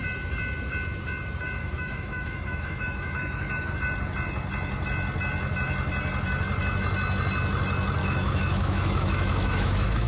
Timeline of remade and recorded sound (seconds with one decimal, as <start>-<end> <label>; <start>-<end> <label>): 0.0-1.6 recorded; 1.6-3.7 remade; 3.7-8.0 recorded; 8.0-10.1 remade